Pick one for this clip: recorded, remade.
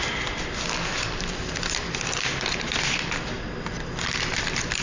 remade